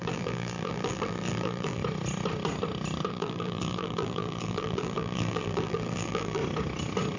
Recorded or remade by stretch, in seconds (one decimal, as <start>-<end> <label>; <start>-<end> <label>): 0.0-1.8 remade; 1.8-3.1 recorded; 3.1-6.4 remade; 6.4-7.2 recorded

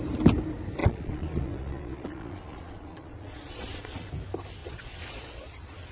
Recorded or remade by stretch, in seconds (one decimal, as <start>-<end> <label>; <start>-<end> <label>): 0.0-0.8 recorded; 0.8-4.1 remade; 4.1-4.6 recorded; 4.6-5.9 remade

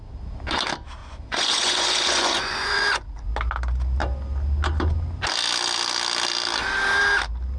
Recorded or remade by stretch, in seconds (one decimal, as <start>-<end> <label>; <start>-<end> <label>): 0.0-1.0 recorded; 1.0-3.3 remade; 3.3-7.6 recorded

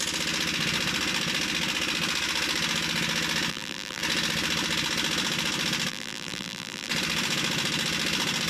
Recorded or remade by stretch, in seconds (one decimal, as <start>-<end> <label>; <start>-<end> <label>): 0.0-3.5 recorded; 3.5-4.0 remade; 4.0-5.9 recorded; 5.9-6.9 remade; 6.9-8.5 recorded

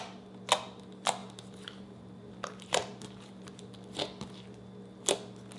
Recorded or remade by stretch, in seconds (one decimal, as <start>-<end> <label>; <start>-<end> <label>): 0.0-1.2 recorded; 1.2-3.6 remade; 3.6-5.6 recorded